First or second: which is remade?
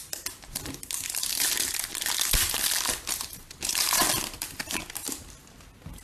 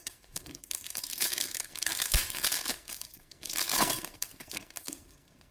second